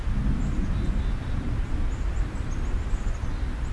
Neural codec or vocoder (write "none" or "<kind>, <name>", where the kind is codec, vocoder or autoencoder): none